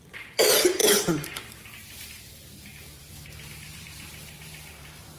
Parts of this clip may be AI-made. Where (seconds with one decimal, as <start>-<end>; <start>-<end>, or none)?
0.0-5.2